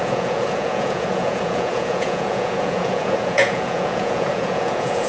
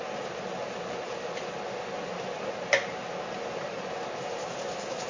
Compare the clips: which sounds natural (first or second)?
second